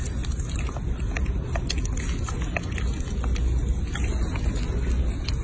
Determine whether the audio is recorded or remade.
recorded